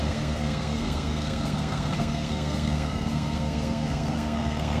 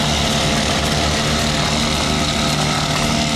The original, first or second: second